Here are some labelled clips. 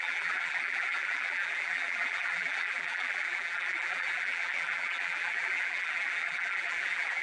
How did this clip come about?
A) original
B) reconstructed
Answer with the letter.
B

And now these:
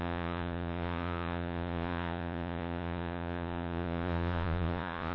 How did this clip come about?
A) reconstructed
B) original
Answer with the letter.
A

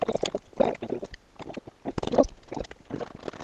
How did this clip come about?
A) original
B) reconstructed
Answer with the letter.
A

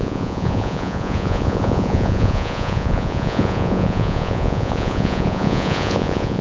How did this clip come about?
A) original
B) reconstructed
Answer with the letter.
B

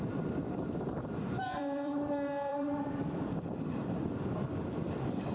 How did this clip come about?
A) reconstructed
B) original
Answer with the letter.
A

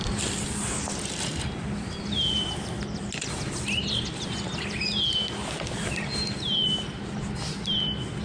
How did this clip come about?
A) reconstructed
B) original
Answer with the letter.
B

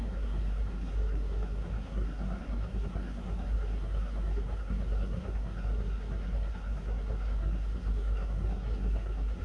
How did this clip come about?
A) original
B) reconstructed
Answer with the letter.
B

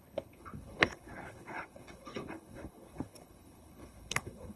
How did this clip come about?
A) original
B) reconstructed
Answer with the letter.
B